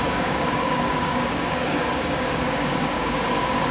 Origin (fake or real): fake